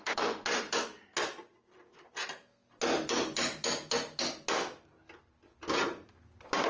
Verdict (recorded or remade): recorded